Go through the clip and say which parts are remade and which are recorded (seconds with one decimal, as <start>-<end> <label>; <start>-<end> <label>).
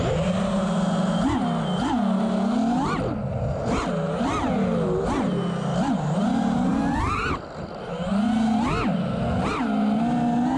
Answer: 0.0-10.6 recorded